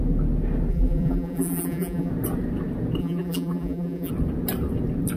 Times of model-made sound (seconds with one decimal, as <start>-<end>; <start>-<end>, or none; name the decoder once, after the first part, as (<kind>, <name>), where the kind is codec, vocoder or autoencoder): 0.7-2.1 (vocoder, BigVGAN v2); 3.0-4.1